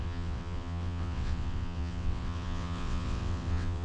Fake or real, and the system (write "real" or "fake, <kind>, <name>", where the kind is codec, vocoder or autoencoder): fake, vocoder, WaveNeXt